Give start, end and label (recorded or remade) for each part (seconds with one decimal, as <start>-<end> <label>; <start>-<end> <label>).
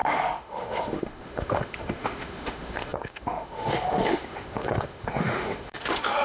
0.0-6.2 remade